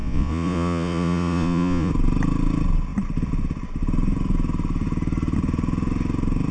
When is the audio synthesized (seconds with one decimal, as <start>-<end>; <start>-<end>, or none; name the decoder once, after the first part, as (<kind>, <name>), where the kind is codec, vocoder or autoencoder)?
0.0-1.9 (vocoder, Vocos)

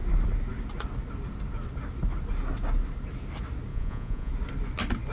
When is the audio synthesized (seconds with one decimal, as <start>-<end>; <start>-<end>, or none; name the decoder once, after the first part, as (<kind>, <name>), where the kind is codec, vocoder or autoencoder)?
3.7-4.3 (vocoder, Vocos)

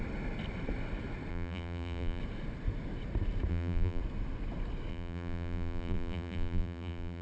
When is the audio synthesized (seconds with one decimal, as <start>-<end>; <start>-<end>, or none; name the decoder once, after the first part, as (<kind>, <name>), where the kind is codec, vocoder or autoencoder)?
1.3-2.2 (vocoder, BigVGAN v2); 3.5-4.0; 4.9-7.2